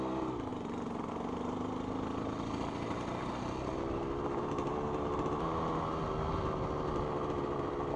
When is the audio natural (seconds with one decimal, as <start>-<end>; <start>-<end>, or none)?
0.0-8.0